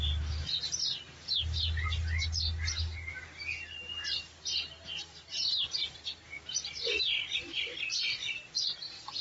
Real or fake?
real